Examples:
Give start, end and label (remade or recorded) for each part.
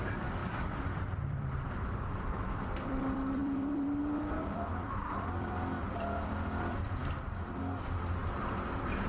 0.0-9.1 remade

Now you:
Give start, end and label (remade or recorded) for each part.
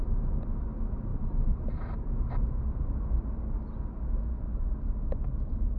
0.0-1.1 recorded; 1.1-4.6 remade; 4.6-5.8 recorded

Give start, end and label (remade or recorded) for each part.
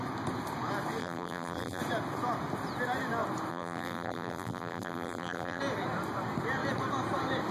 0.0-1.0 recorded; 1.0-1.8 remade; 1.8-3.5 recorded; 3.5-5.6 remade; 5.6-7.5 recorded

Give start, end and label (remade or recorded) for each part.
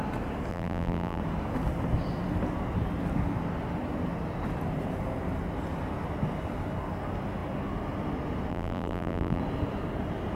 0.0-0.5 recorded; 0.5-1.2 remade; 1.2-8.5 recorded; 8.5-9.4 remade; 9.4-10.3 recorded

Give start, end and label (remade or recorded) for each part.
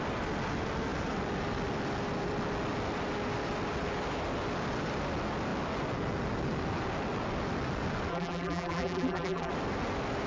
0.0-8.1 recorded; 8.1-9.5 remade; 9.5-10.3 recorded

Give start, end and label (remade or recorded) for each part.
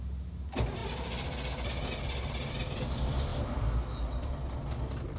0.0-5.2 recorded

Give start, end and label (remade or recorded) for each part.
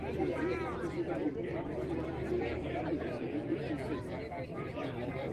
0.0-1.4 recorded; 1.4-3.2 remade; 3.2-4.5 recorded; 4.5-5.3 remade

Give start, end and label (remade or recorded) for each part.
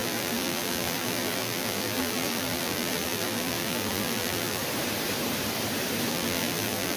0.0-4.6 remade; 4.6-6.1 recorded; 6.1-7.0 remade